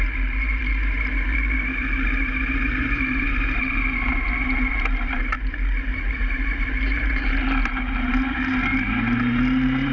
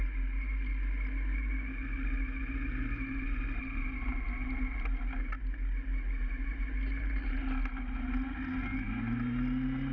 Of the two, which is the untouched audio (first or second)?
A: second